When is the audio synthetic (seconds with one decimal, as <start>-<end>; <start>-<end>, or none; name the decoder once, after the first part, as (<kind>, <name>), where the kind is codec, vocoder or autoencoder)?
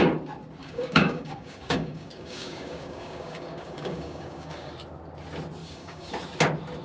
0.6-4.7 (codec, DAC); 5.6-6.1